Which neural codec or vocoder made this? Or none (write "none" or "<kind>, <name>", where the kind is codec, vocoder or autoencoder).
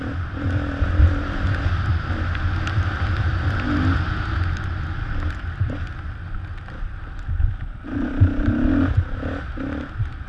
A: none